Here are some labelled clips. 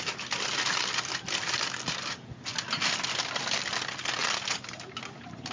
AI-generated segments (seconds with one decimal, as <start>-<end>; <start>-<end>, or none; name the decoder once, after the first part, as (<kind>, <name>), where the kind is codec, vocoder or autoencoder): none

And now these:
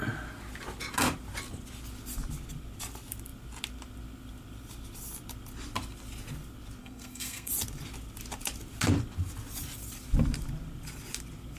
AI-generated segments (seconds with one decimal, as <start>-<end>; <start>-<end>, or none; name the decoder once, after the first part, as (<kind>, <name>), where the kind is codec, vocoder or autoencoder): 6.8-7.5 (codec, SNAC)

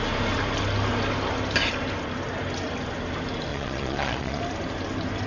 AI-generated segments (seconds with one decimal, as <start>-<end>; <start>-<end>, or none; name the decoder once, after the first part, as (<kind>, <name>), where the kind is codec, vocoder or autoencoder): 3.5-4.4 (vocoder, Vocos)

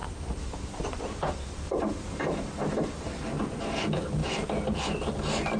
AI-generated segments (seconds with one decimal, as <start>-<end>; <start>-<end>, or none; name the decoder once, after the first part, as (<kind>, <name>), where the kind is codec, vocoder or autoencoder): 0.0-3.4 (vocoder, BigVGAN v2)